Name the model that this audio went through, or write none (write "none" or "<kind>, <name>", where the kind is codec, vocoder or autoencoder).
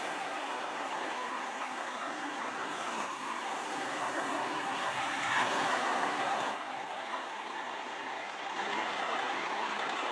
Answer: codec, SNAC